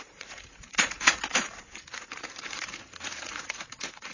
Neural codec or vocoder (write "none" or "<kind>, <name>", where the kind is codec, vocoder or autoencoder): vocoder, Vocos